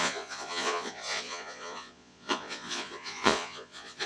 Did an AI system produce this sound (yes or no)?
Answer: yes